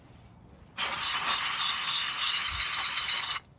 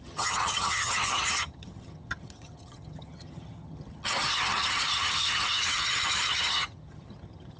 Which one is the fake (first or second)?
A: second